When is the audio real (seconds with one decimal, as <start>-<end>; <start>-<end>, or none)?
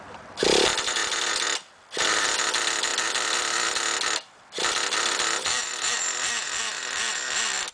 0.0-7.7